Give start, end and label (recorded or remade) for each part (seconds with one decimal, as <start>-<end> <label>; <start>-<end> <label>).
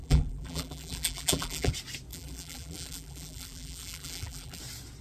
0.0-1.7 remade; 1.7-2.1 recorded; 2.1-4.6 remade; 4.6-5.0 recorded